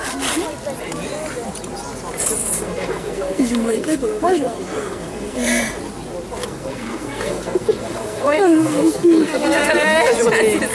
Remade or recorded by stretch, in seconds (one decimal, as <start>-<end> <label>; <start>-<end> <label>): 0.0-2.4 recorded; 2.4-5.6 remade; 5.6-6.4 recorded; 6.4-10.1 remade; 10.1-10.7 recorded